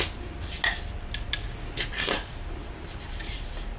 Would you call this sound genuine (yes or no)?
yes